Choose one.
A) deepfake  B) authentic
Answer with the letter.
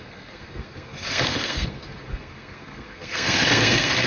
A